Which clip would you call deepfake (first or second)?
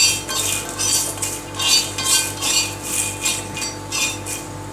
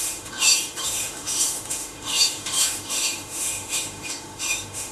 second